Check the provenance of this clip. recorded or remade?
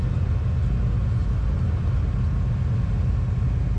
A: recorded